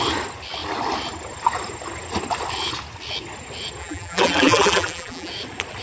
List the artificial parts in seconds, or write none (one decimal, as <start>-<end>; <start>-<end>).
3.8-5.3